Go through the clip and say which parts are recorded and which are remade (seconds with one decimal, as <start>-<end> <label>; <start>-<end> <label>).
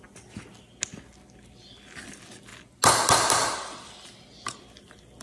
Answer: 0.0-5.2 recorded